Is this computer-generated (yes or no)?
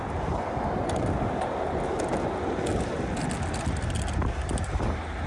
no